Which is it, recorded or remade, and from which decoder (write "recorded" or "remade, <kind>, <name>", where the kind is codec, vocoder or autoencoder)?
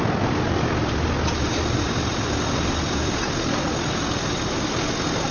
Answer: recorded